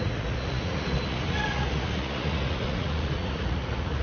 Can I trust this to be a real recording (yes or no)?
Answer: no